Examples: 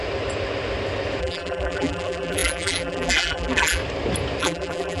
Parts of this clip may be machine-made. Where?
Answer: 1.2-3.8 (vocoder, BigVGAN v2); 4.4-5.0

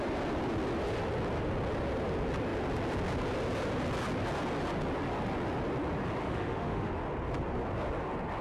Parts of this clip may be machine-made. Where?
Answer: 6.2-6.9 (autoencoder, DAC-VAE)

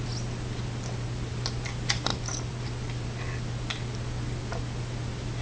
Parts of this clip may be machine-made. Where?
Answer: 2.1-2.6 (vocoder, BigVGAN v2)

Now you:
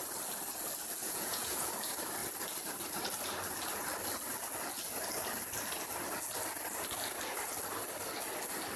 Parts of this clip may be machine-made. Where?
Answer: 1.0-1.7 (vocoder, Vocos)

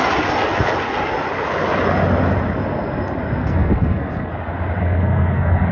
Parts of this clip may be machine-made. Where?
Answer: 3.4-4.3 (codec, SNAC); 4.8-5.7

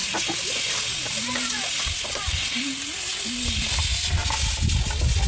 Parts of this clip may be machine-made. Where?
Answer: none

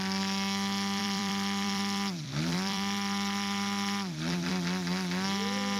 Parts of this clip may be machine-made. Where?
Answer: 1.0-4.5 (vocoder, BigVGAN v2)